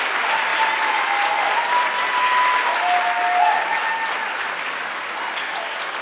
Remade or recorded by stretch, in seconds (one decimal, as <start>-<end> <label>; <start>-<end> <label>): 0.0-6.0 recorded